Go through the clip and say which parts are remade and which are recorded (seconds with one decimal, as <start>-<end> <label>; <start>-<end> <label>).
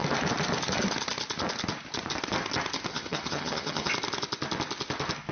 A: 0.0-2.9 recorded; 2.9-3.9 remade; 3.9-5.3 recorded